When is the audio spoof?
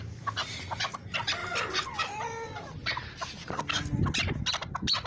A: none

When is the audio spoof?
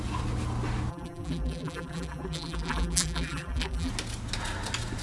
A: 0.9-3.9 (vocoder, BigVGAN v2)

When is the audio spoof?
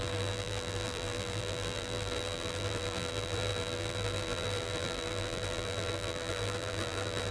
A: 0.0-7.3 (vocoder, BigVGAN v2)